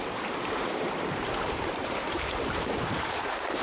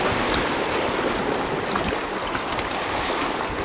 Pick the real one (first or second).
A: second